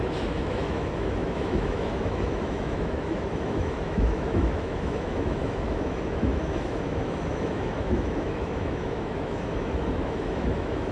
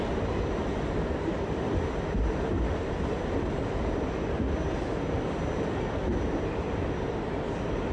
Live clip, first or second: second